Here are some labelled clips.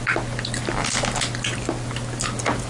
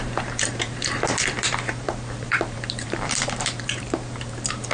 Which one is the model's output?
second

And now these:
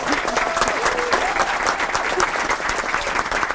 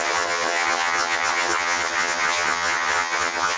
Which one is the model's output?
second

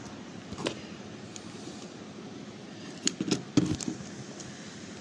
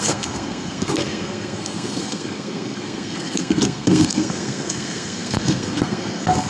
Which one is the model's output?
second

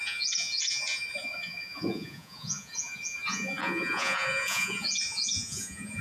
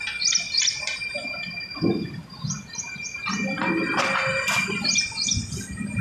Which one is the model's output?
first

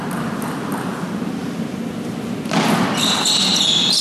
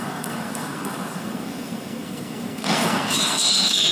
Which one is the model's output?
second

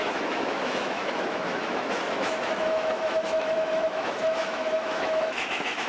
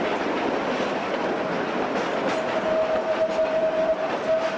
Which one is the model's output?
first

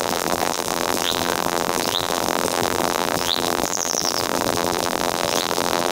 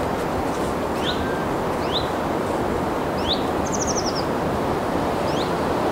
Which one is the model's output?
first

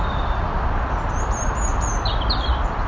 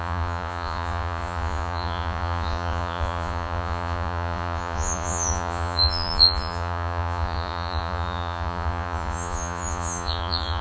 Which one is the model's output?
second